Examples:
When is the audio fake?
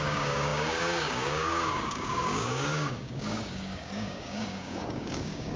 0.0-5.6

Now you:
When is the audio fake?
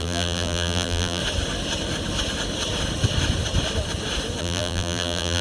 0.0-1.2; 4.4-5.4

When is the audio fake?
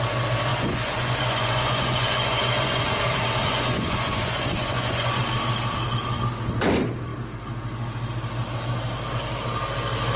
0.5-2.9; 3.4-5.2